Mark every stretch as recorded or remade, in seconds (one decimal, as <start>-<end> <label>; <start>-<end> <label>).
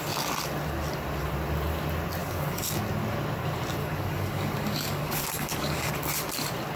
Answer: 0.0-2.2 recorded; 2.2-2.8 remade; 2.8-3.8 recorded; 3.8-5.9 remade; 5.9-6.8 recorded